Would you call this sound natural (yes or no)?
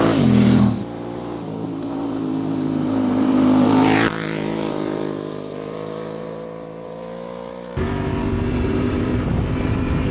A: no